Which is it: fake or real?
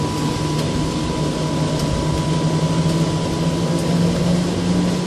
real